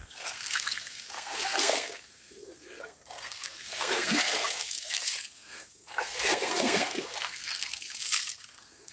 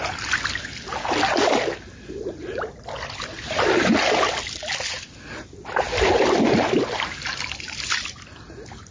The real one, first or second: second